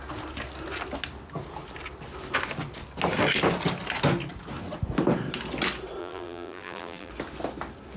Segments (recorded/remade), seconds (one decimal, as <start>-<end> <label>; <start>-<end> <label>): 0.0-6.0 recorded; 6.0-7.1 remade; 7.1-8.0 recorded